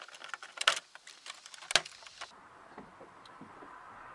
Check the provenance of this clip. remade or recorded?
recorded